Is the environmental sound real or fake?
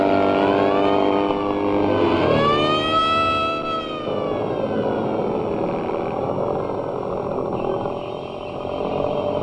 real